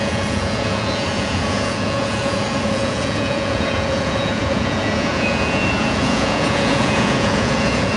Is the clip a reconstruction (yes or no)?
yes